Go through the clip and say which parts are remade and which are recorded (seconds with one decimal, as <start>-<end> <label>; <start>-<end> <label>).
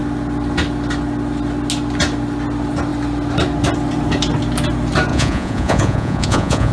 0.0-5.1 recorded; 5.1-6.7 remade